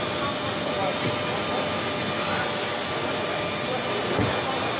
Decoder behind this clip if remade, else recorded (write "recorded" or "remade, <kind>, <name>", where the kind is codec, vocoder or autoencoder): recorded